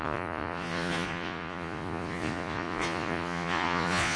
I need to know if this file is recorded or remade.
remade